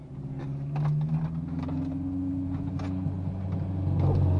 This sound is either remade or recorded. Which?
recorded